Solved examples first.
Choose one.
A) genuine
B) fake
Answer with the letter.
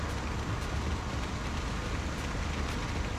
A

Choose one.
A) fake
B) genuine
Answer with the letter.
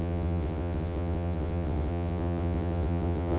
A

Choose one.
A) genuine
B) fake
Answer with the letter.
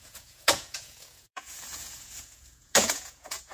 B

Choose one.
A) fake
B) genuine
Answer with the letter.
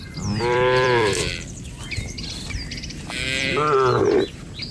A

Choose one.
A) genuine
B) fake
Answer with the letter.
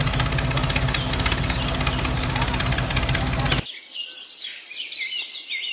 A